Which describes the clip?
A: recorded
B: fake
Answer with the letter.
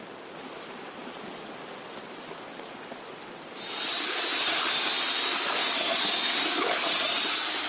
A